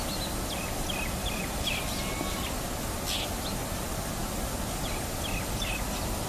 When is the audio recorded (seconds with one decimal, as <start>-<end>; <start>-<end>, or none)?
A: 0.0-6.3